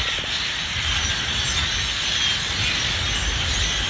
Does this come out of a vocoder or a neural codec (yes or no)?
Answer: no